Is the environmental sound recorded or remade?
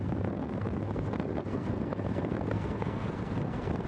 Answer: remade